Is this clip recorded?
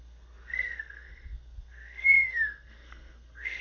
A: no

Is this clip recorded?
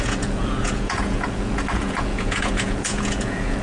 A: no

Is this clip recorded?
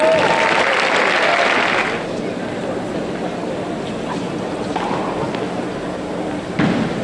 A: yes